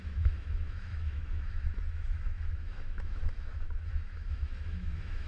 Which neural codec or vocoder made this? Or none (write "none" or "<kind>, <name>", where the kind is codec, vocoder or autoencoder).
autoencoder, DAC-VAE